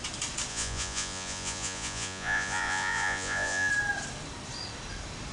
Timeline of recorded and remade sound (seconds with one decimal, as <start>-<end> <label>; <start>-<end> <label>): 0.0-0.5 recorded; 0.5-3.7 remade; 3.7-5.3 recorded